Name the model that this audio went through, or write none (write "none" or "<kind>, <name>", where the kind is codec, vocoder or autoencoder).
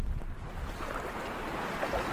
none